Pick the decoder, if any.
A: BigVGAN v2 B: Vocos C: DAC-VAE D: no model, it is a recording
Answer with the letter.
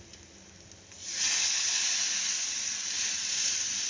D